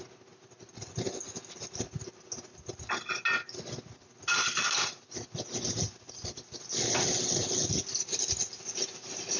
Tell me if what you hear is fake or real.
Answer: real